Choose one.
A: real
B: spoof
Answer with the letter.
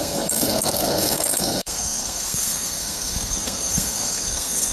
B